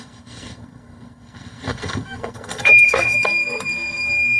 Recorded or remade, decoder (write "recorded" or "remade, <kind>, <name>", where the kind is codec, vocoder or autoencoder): remade, codec, SNAC